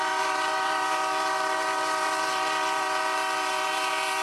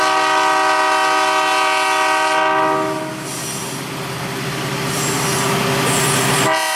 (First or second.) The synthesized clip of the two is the first